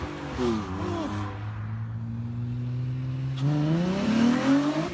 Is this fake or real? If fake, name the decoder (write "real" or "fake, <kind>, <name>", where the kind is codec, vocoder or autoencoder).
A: real